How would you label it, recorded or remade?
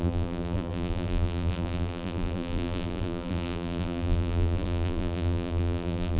remade